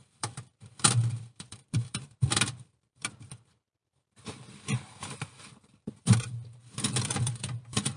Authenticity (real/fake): fake